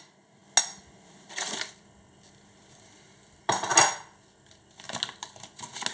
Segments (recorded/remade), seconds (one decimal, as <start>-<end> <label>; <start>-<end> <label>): 0.0-0.4 remade; 0.4-1.2 recorded; 1.2-3.7 remade; 3.7-5.9 recorded